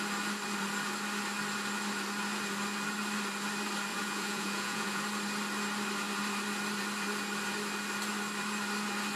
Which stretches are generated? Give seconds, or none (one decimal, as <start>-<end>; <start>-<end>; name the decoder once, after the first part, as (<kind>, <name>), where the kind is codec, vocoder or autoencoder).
3.9-5.0 (vocoder, Vocos)